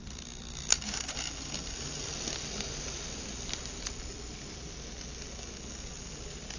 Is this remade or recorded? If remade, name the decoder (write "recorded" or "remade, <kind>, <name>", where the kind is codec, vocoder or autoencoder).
recorded